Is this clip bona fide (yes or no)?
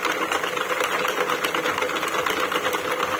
yes